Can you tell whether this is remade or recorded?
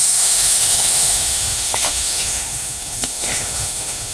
remade